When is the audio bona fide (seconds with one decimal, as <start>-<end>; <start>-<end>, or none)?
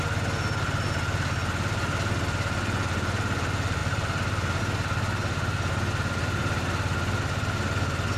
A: 0.0-8.2